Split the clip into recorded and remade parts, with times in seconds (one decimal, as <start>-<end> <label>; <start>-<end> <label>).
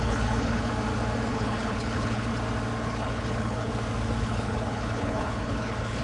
0.0-0.7 remade; 0.7-1.3 recorded; 1.3-2.3 remade; 2.3-2.8 recorded; 2.8-3.7 remade; 3.7-4.2 recorded; 4.2-6.0 remade